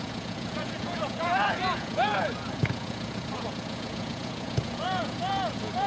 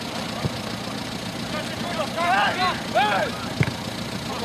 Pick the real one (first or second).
second